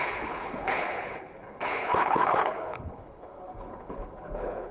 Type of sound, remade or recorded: remade